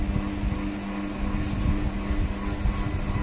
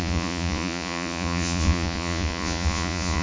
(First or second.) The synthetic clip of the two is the second